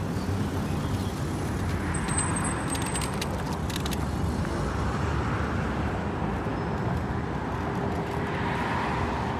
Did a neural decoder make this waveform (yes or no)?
no